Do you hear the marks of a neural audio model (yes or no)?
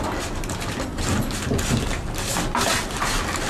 no